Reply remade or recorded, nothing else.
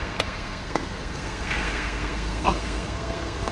remade